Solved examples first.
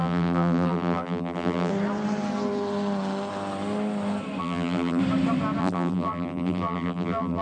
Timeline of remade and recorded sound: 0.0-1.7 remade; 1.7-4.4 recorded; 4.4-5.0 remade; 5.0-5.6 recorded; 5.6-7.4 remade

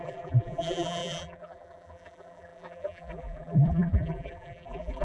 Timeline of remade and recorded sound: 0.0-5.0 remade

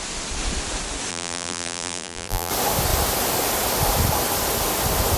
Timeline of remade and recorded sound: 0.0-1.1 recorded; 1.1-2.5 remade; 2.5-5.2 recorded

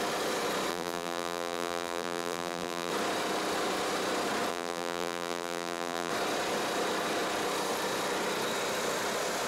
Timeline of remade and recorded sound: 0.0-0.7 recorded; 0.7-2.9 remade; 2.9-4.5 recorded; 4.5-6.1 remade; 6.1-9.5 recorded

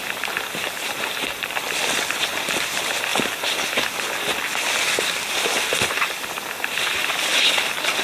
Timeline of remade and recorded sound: 0.0-3.1 remade; 3.1-5.0 recorded; 5.0-8.0 remade